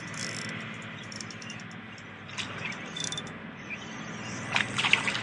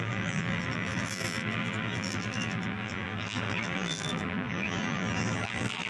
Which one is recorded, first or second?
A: first